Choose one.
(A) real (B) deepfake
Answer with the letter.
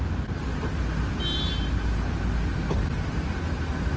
A